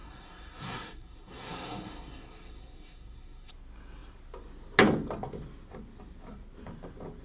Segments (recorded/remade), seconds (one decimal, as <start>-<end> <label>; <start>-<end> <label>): 0.0-3.5 remade; 3.5-7.2 recorded